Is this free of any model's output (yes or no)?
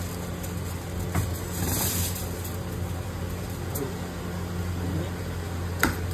yes